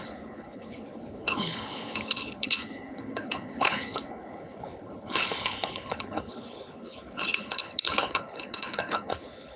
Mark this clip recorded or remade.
remade